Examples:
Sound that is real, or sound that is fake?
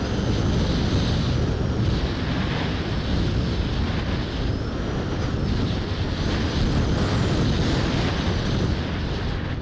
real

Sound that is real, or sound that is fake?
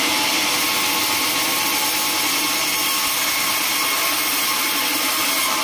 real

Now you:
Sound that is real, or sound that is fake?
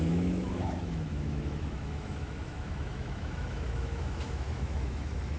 fake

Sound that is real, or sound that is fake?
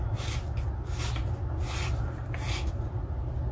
real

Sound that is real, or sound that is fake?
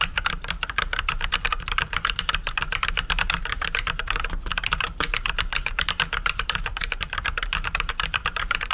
fake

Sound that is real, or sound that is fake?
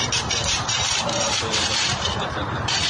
fake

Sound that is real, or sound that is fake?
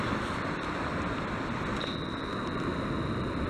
fake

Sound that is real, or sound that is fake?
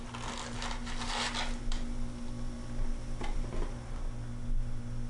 real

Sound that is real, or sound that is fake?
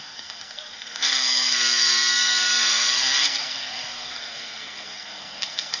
fake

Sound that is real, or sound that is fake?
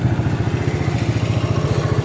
real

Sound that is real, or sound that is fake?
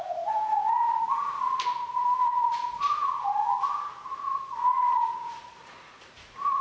fake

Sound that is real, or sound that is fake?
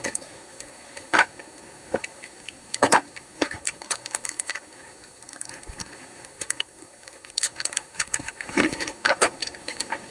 fake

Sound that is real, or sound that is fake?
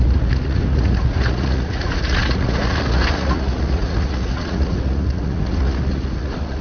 fake